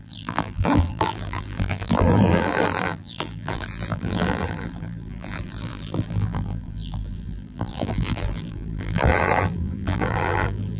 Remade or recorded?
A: remade